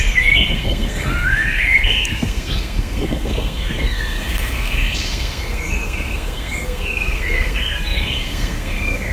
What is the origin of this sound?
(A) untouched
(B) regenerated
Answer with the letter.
B